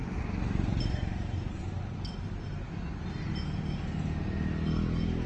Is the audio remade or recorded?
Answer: recorded